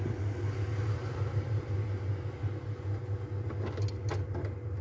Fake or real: real